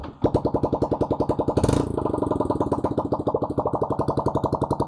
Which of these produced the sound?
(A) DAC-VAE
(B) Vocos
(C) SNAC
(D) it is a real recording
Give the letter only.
D